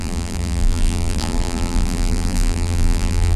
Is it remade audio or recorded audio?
remade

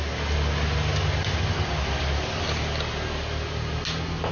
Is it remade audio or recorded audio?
recorded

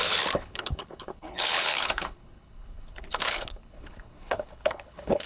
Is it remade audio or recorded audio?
remade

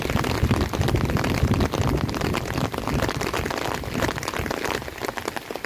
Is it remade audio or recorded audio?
recorded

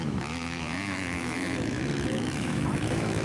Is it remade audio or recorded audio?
remade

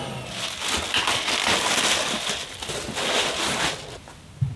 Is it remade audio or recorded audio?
recorded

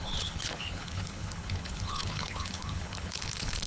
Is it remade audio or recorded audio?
remade